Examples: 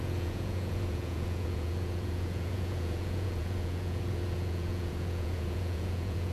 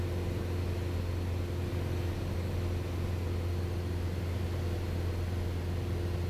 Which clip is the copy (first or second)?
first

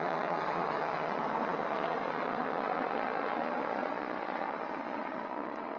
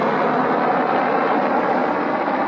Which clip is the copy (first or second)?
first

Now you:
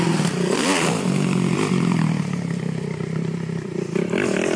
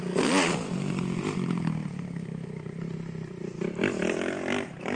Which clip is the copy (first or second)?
first